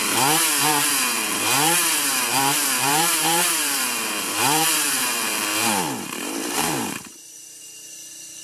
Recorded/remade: remade